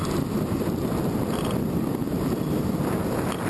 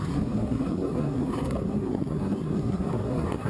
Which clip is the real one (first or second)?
first